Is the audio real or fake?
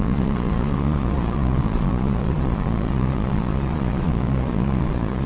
fake